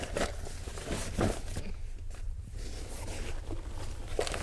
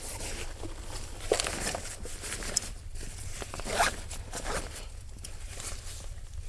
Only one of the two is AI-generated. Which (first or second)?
second